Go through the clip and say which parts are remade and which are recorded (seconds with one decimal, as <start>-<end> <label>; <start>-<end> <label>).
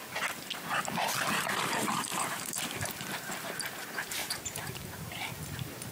0.0-2.1 recorded; 2.1-2.6 remade; 2.6-4.2 recorded; 4.2-5.1 remade; 5.1-5.9 recorded